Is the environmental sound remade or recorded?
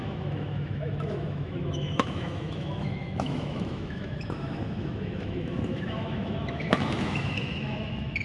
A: remade